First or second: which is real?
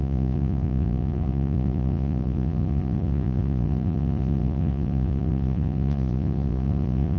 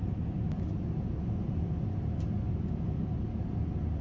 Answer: second